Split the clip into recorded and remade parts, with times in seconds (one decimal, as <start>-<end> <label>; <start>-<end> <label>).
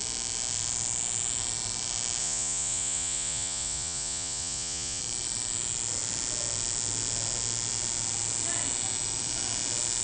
0.0-2.2 recorded; 2.2-5.0 remade; 5.0-10.0 recorded